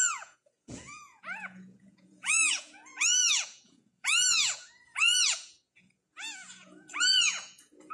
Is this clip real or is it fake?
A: fake